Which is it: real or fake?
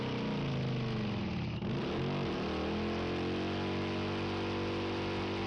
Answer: real